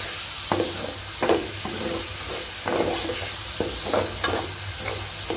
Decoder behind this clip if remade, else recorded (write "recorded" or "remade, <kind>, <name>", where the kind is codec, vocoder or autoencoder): recorded